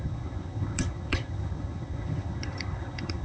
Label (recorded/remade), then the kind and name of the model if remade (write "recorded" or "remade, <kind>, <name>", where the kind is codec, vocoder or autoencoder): remade, vocoder, HiFi-GAN